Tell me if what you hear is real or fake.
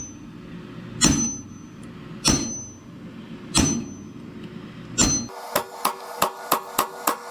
real